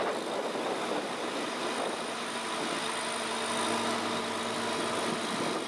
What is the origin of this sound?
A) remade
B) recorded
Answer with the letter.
B